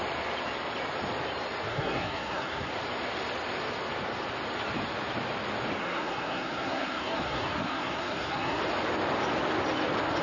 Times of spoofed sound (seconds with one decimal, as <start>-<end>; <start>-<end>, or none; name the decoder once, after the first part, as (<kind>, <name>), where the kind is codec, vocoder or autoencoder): 1.7-2.7 (codec, SNAC); 5.8-8.6